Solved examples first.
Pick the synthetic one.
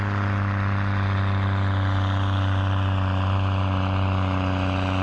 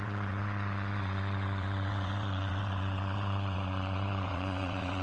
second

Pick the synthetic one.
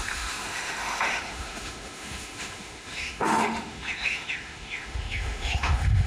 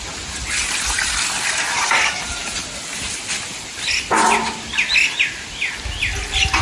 first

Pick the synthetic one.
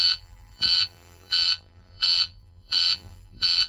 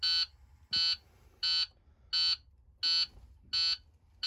first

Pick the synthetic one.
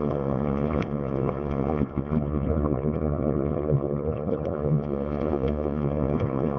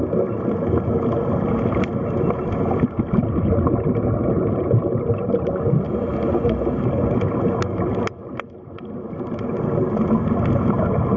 first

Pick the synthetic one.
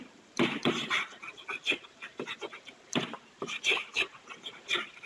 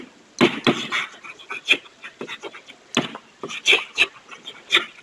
first